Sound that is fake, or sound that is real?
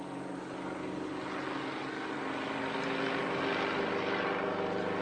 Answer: real